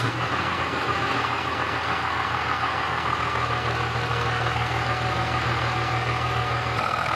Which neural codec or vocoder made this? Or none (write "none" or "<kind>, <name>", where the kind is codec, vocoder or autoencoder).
codec, SNAC